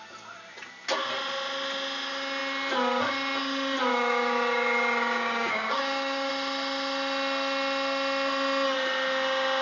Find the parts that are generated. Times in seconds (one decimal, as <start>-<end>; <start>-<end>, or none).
3.9-6.3